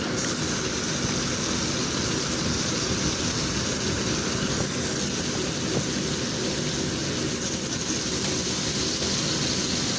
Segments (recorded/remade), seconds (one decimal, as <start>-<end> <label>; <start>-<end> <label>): 0.0-10.0 recorded